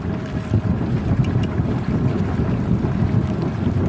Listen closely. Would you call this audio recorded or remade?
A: recorded